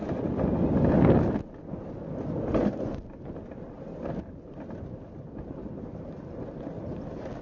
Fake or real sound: real